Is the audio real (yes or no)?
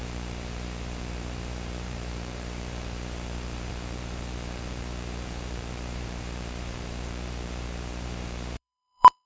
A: no